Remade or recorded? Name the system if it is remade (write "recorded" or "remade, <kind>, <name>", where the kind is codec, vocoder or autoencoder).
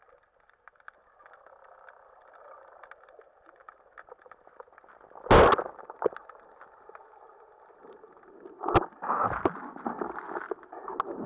recorded